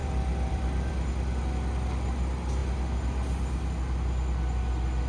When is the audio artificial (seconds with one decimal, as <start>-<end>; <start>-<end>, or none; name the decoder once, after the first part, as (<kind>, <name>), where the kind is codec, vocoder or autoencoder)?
0.0-0.9 (vocoder, BigVGAN v2)